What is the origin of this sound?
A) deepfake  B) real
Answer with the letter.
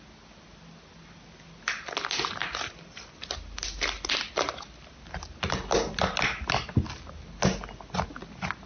B